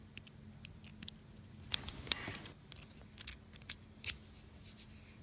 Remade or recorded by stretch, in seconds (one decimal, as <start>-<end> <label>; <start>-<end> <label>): 0.0-5.2 recorded